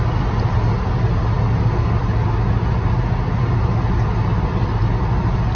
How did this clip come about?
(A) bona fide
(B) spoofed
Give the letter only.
A